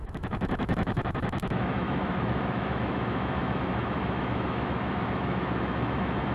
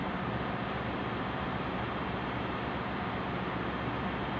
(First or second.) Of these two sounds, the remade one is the first